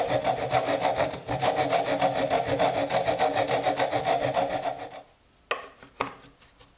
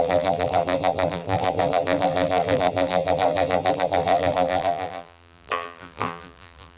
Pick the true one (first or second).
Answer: first